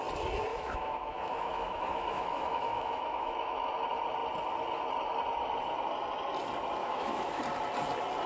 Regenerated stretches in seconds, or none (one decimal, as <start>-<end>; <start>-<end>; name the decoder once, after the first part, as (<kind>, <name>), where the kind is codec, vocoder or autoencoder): 0.5-3.7 (autoencoder, DAC-VAE); 6.8-7.4